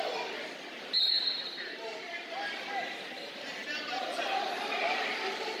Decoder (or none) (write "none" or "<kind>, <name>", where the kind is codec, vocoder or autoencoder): none